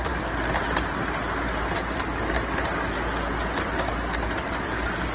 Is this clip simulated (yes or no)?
no